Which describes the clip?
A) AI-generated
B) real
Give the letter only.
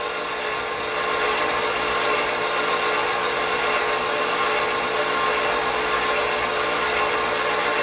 B